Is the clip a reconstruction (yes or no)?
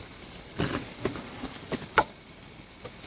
no